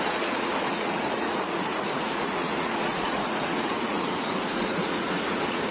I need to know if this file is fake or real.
fake